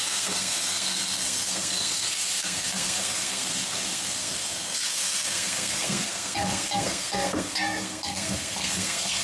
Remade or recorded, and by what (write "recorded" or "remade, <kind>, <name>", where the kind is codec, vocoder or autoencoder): remade, codec, SNAC